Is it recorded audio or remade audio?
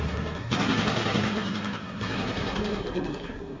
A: remade